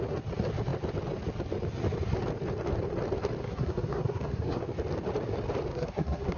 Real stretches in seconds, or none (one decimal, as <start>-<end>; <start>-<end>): 0.0-3.4; 4.6-5.7